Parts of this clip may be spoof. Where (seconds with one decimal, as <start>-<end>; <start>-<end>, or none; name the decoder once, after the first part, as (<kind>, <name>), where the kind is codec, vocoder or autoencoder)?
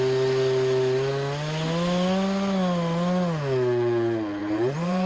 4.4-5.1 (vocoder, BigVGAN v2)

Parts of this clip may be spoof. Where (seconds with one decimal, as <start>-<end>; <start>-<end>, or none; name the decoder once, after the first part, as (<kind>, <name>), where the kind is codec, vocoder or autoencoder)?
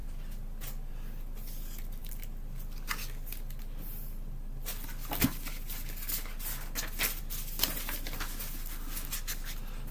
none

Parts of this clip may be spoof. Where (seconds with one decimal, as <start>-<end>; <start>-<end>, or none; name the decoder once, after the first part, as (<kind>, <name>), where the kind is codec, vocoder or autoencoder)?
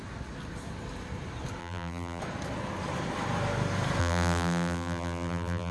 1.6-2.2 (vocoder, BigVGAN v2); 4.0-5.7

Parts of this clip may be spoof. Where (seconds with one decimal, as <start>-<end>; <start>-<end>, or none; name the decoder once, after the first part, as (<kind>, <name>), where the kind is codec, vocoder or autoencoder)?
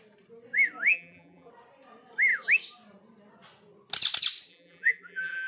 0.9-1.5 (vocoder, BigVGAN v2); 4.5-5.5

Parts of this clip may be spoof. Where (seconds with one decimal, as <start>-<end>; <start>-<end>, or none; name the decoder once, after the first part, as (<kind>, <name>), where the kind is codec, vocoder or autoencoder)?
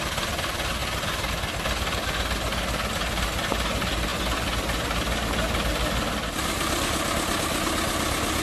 none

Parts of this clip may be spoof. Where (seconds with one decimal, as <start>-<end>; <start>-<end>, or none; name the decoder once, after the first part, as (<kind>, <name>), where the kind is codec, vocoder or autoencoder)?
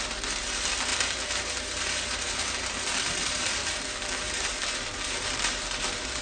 0.0-6.2 (vocoder, BigVGAN v2)